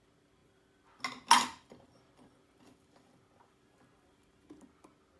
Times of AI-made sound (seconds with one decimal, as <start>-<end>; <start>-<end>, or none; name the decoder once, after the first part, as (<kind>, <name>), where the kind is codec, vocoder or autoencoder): none